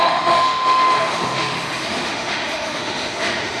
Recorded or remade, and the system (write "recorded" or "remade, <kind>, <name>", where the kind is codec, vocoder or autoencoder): remade, autoencoder, DAC-VAE